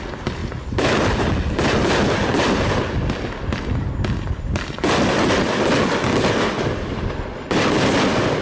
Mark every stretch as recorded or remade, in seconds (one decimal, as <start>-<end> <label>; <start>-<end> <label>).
0.0-8.4 recorded